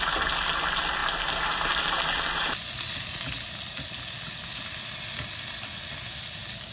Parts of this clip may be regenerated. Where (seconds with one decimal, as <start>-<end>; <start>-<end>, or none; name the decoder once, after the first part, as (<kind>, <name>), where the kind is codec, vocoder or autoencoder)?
none